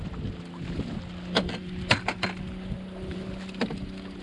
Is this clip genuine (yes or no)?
yes